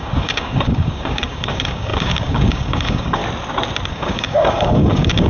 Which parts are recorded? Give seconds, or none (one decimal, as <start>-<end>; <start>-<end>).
3.2-3.9